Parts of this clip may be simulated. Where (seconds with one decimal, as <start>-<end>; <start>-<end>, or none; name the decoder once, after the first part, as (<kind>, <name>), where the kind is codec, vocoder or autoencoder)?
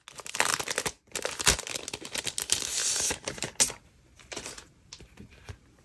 2.8-3.4 (vocoder, BigVGAN v2)